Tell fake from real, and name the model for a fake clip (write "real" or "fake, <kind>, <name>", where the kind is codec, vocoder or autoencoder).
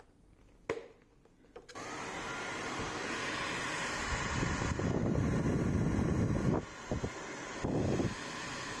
real